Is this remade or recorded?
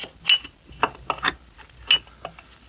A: recorded